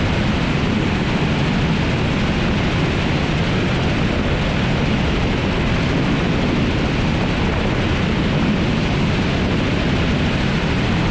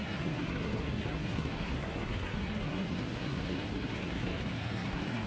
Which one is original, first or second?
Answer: first